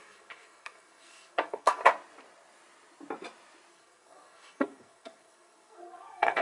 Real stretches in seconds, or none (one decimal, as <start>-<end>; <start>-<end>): 1.8-3.7